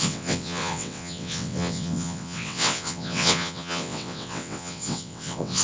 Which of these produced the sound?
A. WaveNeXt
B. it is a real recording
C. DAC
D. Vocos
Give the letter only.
A